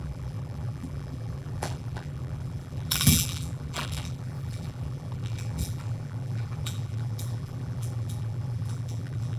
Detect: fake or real fake